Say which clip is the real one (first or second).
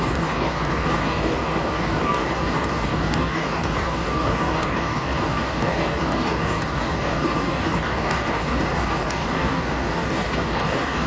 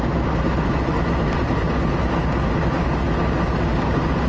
second